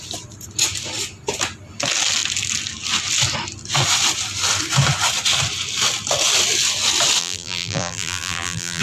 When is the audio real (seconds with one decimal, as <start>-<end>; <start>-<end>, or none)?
0.0-7.2